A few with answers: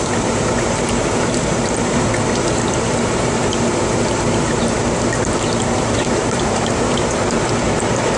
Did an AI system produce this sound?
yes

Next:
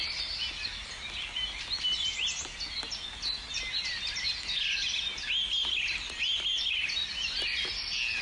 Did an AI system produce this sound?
no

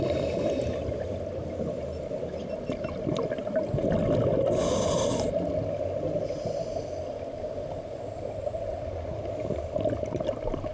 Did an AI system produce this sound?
no